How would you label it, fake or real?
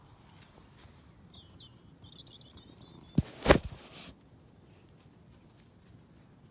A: real